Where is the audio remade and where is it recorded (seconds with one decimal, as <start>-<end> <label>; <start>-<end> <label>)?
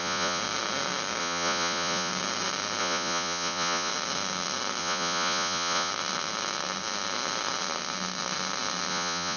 0.0-0.4 remade; 0.4-1.2 recorded; 1.2-2.1 remade; 2.1-2.8 recorded; 2.8-3.9 remade; 3.9-4.8 recorded; 4.8-5.9 remade; 5.9-8.9 recorded; 8.9-9.4 remade